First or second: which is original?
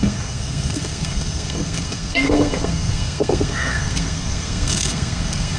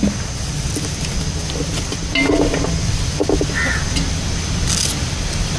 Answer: second